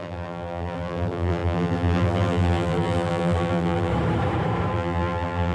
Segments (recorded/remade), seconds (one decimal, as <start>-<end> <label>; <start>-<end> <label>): 0.0-3.9 remade; 3.9-4.7 recorded; 4.7-5.5 remade